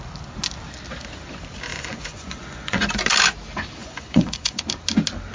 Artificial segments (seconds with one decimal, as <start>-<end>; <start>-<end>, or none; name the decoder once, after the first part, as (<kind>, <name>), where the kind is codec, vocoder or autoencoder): 1.7-2.9 (vocoder, Vocos); 3.8-4.6